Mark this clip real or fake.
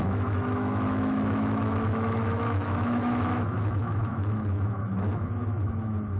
fake